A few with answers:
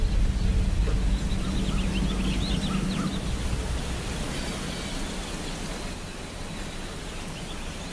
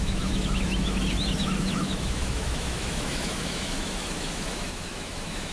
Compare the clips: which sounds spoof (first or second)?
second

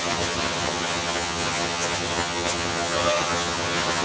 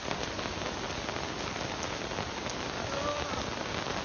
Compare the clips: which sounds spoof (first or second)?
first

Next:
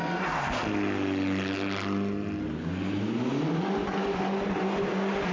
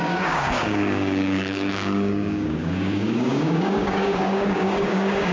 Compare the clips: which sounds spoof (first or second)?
second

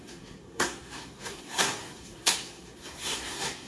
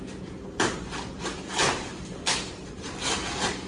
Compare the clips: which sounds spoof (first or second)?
first